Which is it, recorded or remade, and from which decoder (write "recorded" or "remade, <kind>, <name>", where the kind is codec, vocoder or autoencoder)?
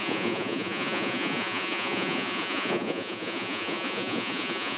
remade, vocoder, Vocos